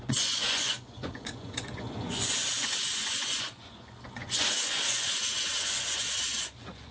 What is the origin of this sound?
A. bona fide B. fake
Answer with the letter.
B